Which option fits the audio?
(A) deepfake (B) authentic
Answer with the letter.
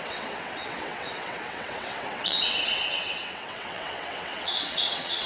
A